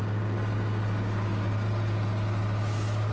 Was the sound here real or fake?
real